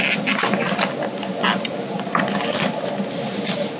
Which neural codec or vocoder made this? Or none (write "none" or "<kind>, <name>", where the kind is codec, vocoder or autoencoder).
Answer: none